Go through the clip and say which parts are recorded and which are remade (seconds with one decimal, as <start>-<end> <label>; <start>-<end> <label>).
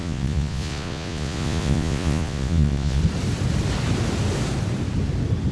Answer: 0.0-3.0 remade; 3.0-5.5 recorded